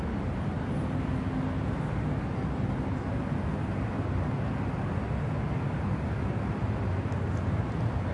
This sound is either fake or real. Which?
real